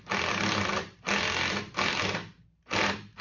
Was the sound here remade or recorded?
recorded